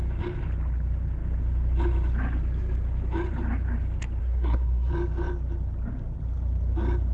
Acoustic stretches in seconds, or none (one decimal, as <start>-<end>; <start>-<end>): 0.0-4.2; 4.9-7.1